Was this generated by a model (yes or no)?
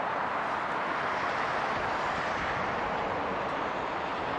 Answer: yes